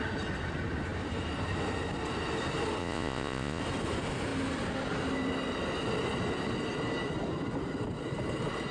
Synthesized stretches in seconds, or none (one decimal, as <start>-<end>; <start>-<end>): 2.8-3.6